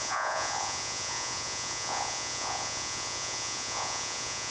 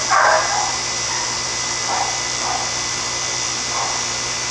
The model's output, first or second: first